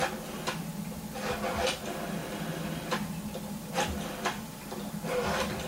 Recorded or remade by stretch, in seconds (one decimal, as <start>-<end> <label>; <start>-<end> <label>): 0.0-2.2 recorded; 2.2-4.4 remade; 4.4-5.7 recorded